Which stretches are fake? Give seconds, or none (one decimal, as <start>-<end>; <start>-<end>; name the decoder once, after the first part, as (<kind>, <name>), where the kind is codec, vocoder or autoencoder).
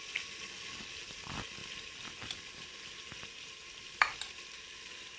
none